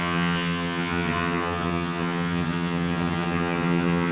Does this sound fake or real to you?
fake